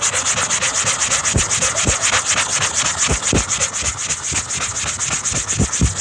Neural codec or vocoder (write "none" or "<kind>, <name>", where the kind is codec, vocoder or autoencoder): none